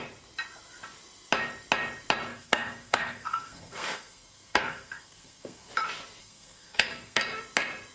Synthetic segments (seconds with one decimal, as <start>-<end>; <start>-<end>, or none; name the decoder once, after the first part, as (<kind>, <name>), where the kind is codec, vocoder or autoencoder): 2.3-5.7 (codec, SNAC); 6.2-7.2